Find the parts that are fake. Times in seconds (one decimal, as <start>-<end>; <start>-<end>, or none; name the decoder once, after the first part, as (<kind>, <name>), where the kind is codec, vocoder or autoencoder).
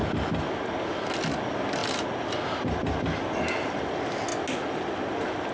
none